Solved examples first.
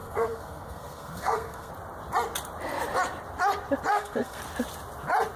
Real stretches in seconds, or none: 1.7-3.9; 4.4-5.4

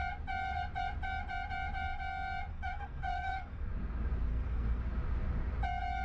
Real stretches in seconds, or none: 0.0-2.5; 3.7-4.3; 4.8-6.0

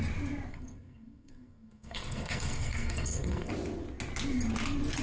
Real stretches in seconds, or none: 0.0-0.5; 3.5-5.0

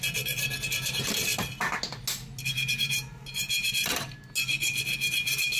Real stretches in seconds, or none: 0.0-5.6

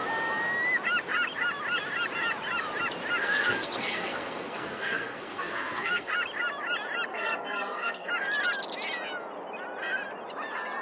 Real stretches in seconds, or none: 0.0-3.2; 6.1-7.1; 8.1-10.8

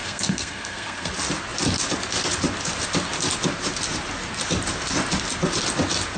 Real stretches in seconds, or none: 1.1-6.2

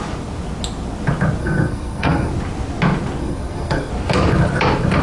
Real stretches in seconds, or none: 0.0-1.4; 2.3-3.2; 3.9-5.0